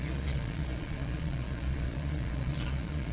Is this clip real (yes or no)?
no